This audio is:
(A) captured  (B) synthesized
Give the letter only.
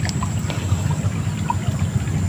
A